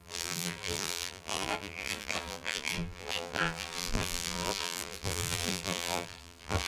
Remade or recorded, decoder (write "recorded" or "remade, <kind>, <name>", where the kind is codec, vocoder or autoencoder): remade, vocoder, BigVGAN v2